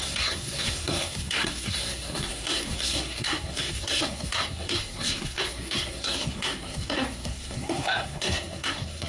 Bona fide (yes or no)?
no